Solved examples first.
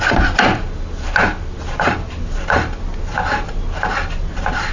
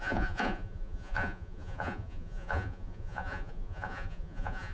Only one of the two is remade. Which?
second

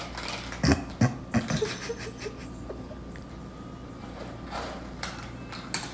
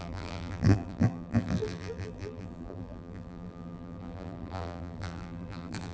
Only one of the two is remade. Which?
second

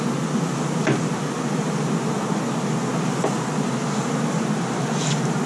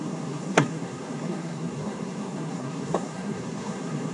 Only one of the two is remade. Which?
second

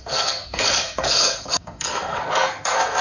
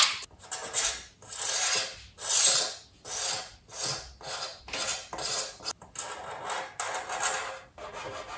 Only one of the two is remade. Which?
first